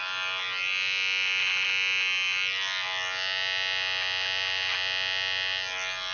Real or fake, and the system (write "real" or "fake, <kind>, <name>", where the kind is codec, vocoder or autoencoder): real